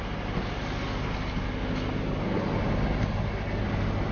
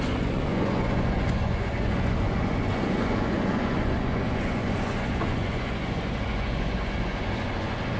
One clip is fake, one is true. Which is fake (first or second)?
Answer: second